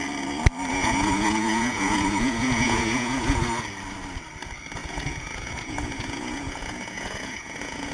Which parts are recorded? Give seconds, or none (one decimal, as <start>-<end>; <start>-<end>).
0.0-0.7; 3.4-4.8